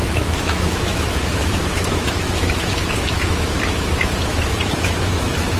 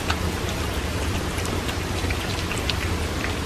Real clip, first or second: second